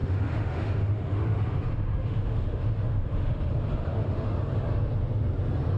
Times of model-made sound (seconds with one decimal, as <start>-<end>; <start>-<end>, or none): 0.0-3.5; 3.9-4.4